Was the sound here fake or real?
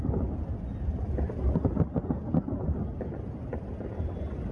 real